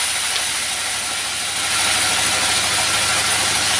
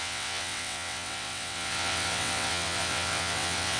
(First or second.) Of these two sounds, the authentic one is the first